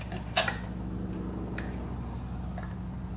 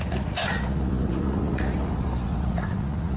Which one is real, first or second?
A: first